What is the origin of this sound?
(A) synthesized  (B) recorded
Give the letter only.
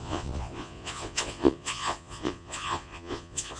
A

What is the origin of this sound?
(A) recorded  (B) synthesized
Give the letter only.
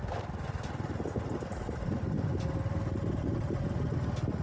A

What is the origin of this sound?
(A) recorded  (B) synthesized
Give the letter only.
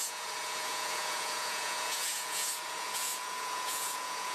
B